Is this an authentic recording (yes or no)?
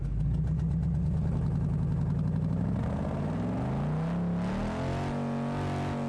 yes